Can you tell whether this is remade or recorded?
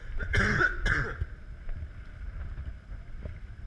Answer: recorded